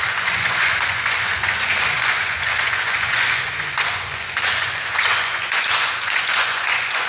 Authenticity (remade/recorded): remade